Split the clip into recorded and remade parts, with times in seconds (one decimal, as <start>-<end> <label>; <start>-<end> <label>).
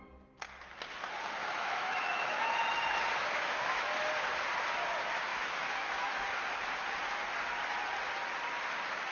0.0-1.4 recorded; 1.4-2.7 remade; 2.7-3.2 recorded; 3.2-3.9 remade; 3.9-5.3 recorded; 5.3-6.4 remade; 6.4-9.1 recorded